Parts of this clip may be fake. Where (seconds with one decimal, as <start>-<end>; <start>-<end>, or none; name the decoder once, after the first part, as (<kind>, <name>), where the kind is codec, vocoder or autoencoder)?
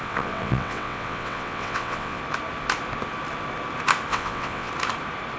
0.0-2.2 (vocoder, WaveNeXt); 4.1-4.7